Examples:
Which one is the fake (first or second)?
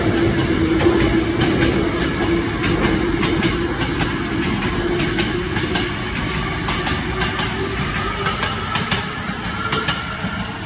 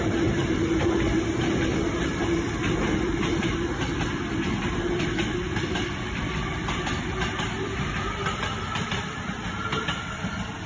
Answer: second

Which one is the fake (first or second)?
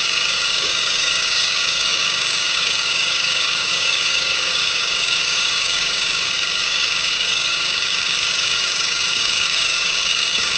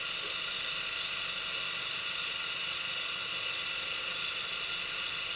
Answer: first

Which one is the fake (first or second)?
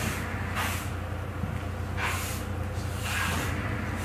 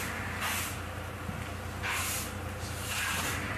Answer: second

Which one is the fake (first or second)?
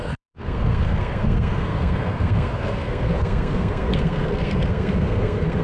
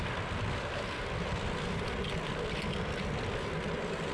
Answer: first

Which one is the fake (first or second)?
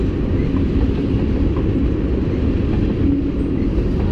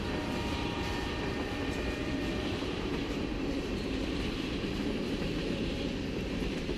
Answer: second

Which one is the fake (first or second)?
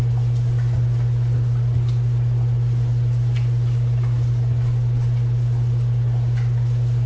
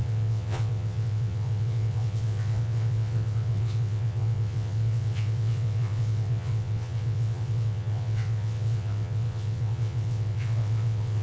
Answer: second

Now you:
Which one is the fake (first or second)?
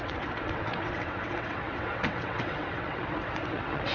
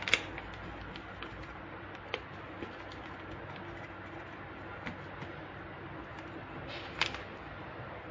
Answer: first